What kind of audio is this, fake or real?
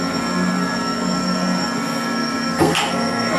fake